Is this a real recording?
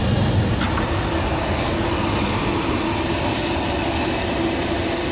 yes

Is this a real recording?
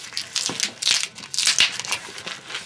yes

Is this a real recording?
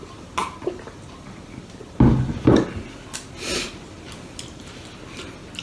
yes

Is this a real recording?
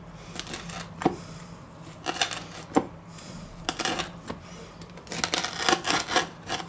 yes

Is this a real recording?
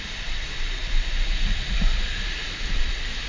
yes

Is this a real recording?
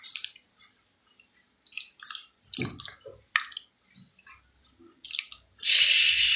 yes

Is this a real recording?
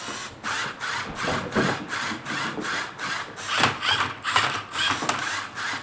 yes